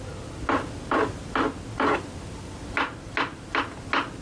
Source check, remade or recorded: recorded